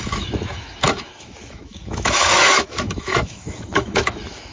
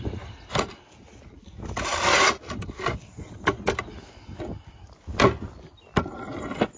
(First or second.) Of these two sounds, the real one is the second